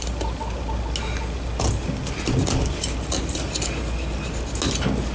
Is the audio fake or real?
real